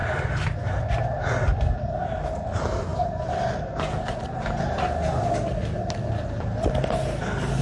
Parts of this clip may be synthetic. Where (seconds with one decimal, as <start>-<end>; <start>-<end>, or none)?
none